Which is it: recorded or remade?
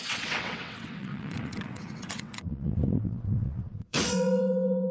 remade